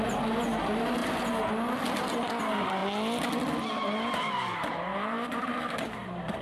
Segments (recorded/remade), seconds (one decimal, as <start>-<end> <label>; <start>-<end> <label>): 0.0-4.6 recorded; 4.6-6.4 remade